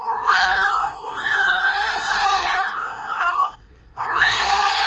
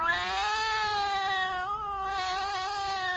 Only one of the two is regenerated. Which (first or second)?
first